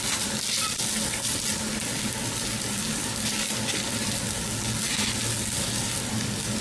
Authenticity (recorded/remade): recorded